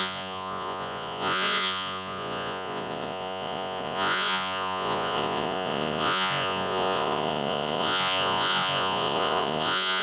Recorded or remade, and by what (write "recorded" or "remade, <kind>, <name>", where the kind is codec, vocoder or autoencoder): remade, vocoder, Vocos